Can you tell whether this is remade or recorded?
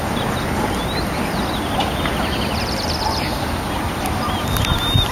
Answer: recorded